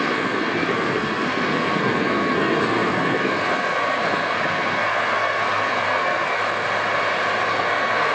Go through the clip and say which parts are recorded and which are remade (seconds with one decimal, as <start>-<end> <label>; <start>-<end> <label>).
0.0-6.4 remade; 6.4-7.5 recorded; 7.5-8.1 remade